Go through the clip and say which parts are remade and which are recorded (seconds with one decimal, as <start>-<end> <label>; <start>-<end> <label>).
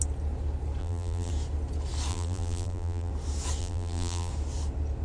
0.0-0.8 recorded; 0.8-1.3 remade; 1.3-2.1 recorded; 2.1-3.1 remade; 3.1-3.6 recorded; 3.6-4.3 remade; 4.3-5.0 recorded